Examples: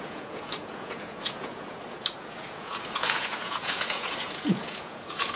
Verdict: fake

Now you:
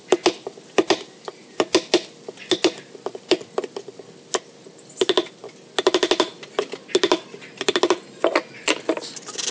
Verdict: real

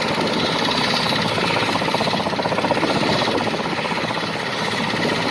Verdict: real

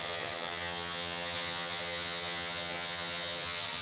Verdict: fake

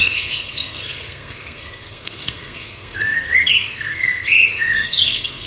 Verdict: fake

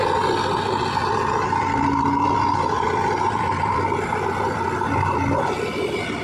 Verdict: real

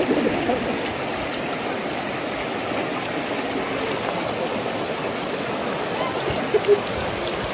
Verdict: real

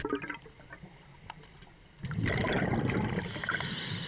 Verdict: real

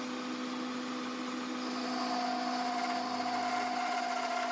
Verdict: real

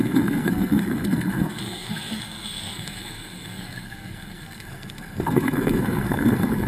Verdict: fake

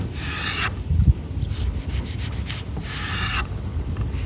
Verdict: real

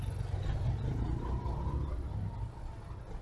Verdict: real